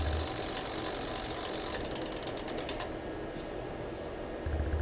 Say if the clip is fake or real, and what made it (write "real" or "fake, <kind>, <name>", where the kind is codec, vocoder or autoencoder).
real